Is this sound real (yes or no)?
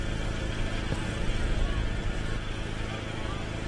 yes